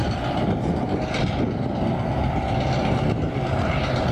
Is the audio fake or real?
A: real